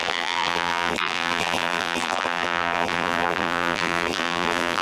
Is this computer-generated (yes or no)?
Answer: yes